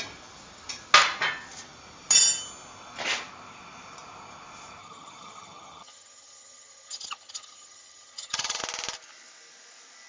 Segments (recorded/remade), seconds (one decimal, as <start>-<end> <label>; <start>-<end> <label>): 0.0-4.8 recorded; 4.8-8.6 remade; 8.6-10.1 recorded